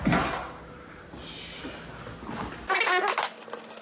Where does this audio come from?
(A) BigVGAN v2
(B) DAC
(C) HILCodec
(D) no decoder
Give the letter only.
D